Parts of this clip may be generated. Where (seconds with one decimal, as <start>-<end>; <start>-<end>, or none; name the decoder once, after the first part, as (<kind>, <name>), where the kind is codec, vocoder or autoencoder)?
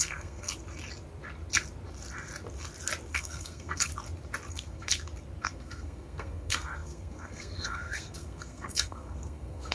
0.0-0.5 (codec, SNAC); 3.1-3.9; 4.5-4.9; 5.4-9.7